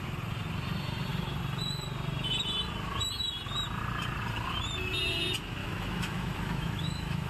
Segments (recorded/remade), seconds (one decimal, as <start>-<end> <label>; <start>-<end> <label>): 0.0-5.6 recorded; 5.6-7.3 remade